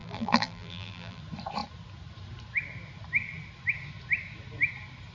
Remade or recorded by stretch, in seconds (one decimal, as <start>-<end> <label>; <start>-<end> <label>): 0.0-1.2 remade; 1.2-5.1 recorded